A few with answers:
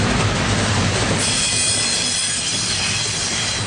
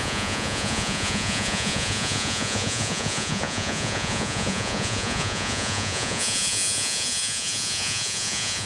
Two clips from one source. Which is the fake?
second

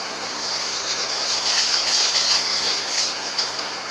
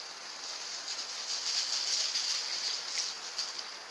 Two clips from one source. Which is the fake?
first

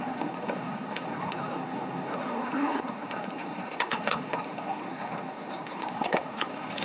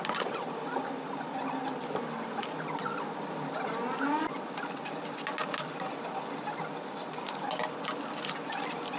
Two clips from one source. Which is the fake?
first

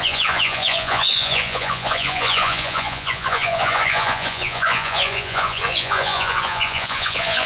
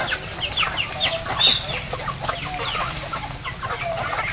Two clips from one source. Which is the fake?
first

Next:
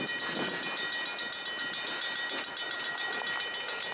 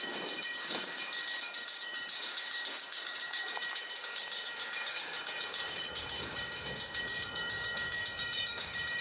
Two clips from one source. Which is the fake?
second